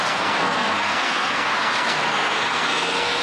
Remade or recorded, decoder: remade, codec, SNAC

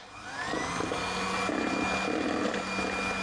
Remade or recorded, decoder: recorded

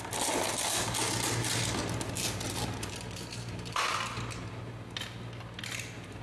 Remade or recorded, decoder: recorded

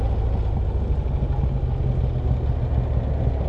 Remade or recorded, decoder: recorded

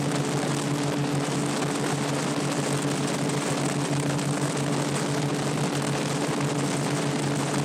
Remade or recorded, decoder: recorded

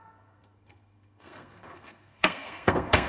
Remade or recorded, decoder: remade, codec, SNAC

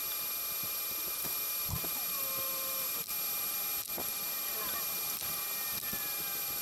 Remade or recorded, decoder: recorded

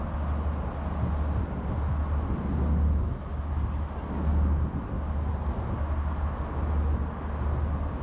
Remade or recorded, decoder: recorded